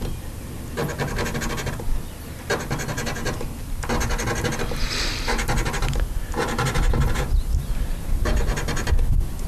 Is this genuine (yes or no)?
yes